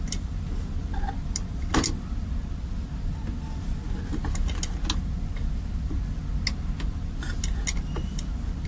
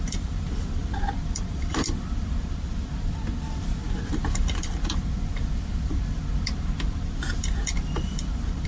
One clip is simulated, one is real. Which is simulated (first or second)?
second